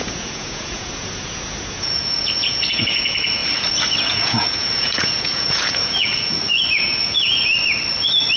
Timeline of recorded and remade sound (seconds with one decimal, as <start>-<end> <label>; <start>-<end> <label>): 0.0-3.4 remade; 3.4-4.0 recorded; 4.0-7.5 remade; 7.5-8.4 recorded